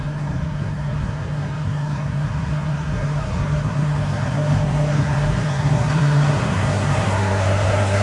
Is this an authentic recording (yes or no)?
no